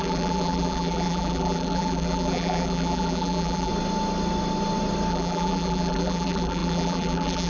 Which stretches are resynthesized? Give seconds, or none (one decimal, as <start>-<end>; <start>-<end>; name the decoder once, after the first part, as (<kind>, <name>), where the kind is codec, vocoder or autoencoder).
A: 0.0-3.7 (vocoder, BigVGAN v2); 5.1-7.5